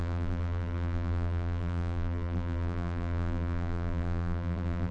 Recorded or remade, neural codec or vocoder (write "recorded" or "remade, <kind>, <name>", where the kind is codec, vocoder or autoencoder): remade, vocoder, BigVGAN v2